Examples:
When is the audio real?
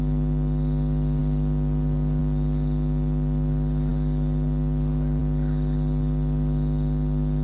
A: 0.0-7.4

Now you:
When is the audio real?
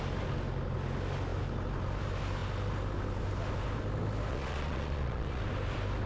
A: 0.0-4.3; 5.4-6.1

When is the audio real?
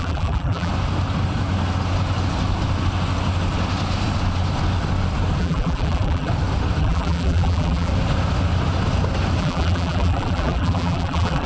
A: 0.7-5.4; 6.3-6.8; 7.9-9.4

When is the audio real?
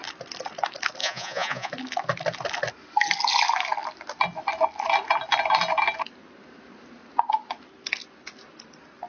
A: 0.0-1.0; 1.7-9.1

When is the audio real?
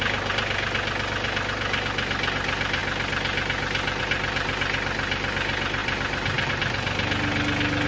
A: 0.0-5.8; 6.5-7.9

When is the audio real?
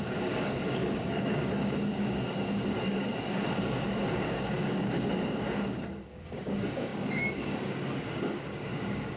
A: none